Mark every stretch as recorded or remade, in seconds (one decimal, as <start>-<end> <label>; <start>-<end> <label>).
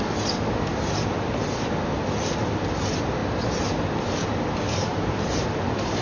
0.0-3.2 recorded; 3.2-3.8 remade; 3.8-4.9 recorded; 4.9-5.6 remade; 5.6-6.0 recorded